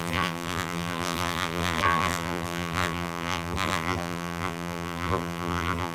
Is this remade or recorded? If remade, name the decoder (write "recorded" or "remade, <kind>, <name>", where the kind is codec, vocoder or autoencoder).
remade, vocoder, BigVGAN v2